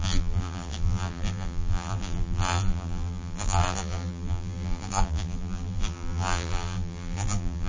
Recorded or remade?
remade